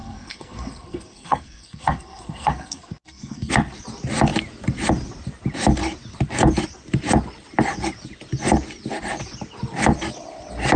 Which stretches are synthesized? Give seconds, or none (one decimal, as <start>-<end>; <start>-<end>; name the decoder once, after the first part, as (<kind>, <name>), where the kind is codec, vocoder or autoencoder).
0.0-3.5 (codec, SNAC)